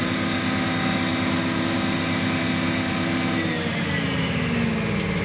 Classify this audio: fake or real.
real